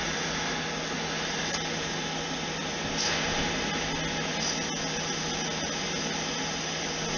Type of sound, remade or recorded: recorded